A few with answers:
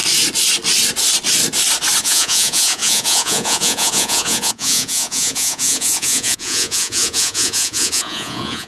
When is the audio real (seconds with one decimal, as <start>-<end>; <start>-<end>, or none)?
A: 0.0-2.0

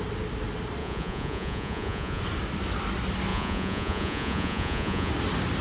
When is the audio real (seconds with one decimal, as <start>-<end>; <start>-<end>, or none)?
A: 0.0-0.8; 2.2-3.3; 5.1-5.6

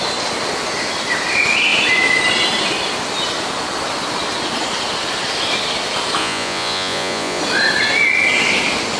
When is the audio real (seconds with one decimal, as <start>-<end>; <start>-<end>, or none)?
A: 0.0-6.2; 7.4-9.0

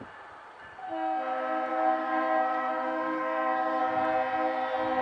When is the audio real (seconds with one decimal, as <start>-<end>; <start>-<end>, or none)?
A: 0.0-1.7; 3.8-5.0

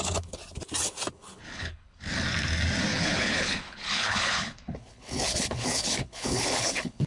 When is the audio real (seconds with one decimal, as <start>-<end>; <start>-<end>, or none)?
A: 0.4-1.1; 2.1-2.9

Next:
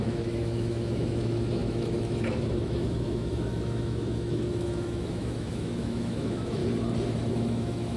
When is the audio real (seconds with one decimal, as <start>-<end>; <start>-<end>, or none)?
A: 6.6-7.3

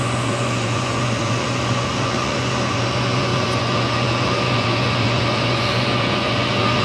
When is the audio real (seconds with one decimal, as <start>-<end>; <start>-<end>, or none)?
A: none